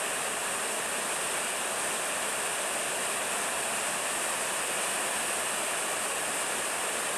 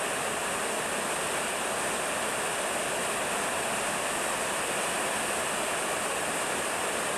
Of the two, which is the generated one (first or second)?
first